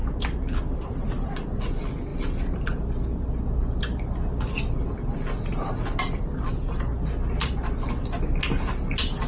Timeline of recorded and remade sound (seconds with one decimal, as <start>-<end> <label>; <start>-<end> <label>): 0.0-6.9 recorded; 6.9-7.5 remade; 7.5-9.3 recorded